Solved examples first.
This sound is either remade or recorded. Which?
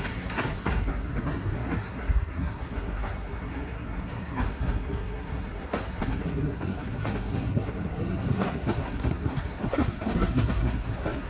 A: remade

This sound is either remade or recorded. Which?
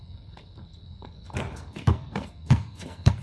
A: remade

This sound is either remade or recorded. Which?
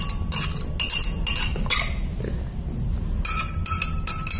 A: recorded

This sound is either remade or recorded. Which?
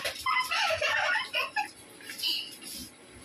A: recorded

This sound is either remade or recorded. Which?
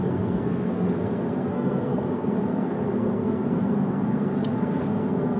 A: remade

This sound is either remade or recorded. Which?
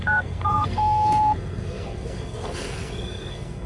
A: remade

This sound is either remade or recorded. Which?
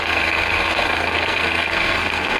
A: remade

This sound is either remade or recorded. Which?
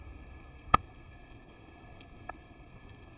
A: remade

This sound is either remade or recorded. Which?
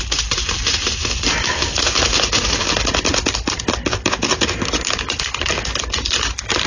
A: recorded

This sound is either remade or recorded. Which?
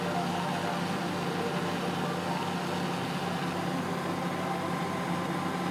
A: recorded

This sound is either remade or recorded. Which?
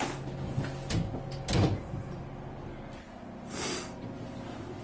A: recorded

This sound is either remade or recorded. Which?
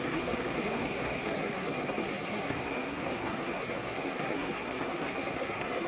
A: remade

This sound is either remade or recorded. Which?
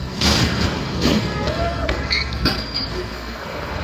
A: remade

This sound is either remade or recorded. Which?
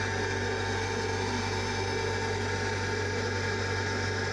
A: recorded